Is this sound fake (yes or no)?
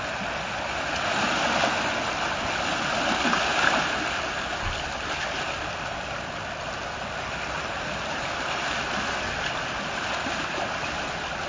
no